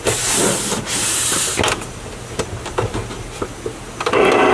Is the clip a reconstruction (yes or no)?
no